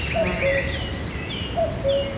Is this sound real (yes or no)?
yes